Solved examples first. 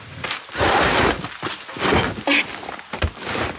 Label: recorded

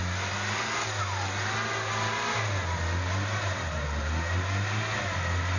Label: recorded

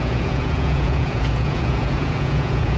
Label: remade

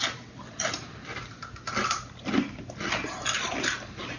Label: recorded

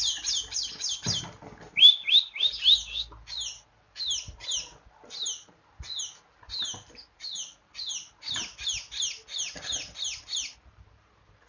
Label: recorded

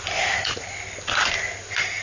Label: recorded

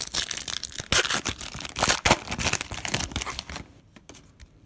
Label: recorded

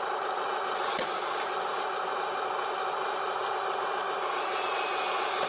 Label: recorded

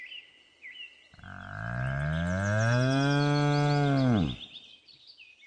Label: recorded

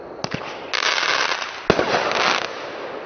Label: recorded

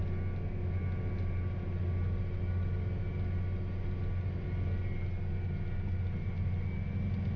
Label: recorded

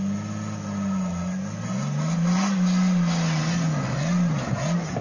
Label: recorded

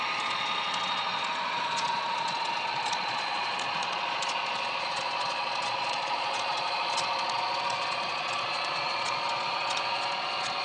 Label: remade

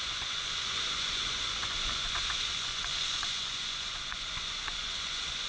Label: remade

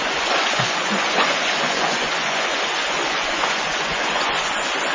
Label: remade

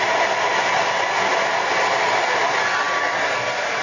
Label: recorded